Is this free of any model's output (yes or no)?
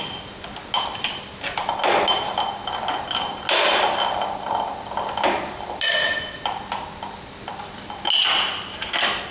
yes